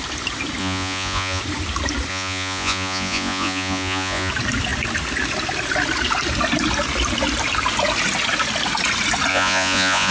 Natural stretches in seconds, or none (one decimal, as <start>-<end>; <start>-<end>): 0.0-0.6; 1.4-2.1; 4.3-9.3